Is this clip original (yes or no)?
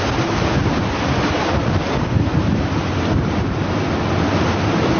yes